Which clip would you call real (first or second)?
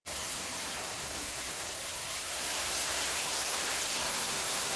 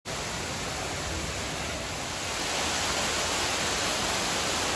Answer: second